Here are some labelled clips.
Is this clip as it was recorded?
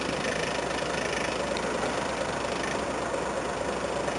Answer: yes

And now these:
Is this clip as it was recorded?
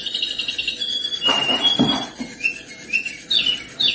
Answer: yes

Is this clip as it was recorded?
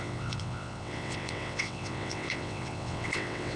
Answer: no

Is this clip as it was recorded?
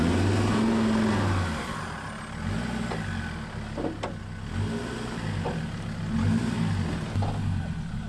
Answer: yes